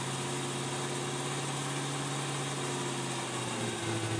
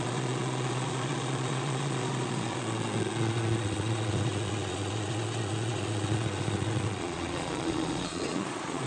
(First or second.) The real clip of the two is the first